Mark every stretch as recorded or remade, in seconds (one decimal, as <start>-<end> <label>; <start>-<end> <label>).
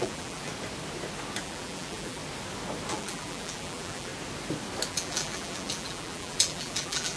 0.0-0.5 remade; 0.5-1.4 recorded; 1.4-2.2 remade; 2.2-2.9 recorded; 2.9-4.1 remade; 4.1-4.9 recorded; 4.9-7.2 remade